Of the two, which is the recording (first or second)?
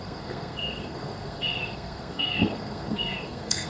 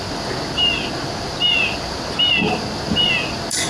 second